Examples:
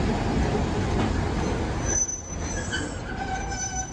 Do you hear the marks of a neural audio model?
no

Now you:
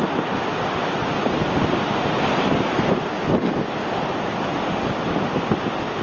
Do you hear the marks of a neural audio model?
no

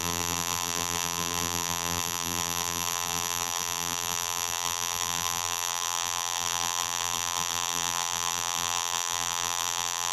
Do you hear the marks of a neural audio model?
yes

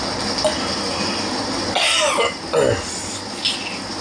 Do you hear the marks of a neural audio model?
no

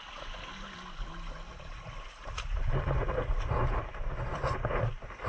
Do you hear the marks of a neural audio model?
no